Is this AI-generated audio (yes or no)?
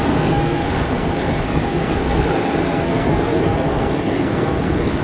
yes